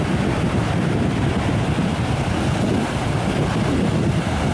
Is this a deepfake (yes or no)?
no